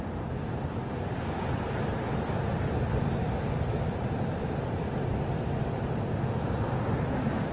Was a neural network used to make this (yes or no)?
no